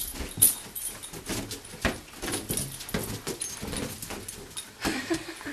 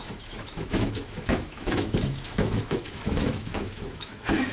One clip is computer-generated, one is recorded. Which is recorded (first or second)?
first